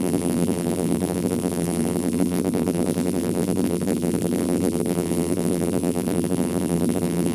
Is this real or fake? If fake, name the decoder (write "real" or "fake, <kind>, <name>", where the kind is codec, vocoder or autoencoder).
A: fake, vocoder, BigVGAN v2